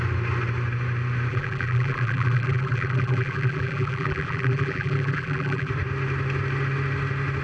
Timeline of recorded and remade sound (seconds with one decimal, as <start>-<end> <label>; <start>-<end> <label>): 0.0-1.3 recorded; 1.3-5.7 remade; 5.7-7.4 recorded